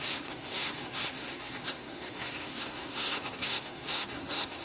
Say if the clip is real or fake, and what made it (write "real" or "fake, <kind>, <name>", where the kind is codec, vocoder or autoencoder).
fake, codec, SNAC